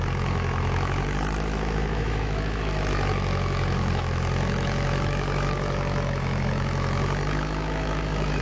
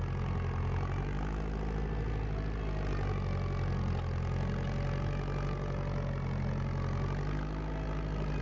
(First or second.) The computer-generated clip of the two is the first